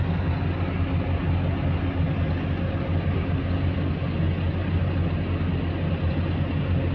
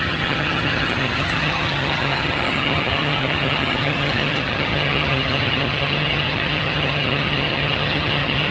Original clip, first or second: first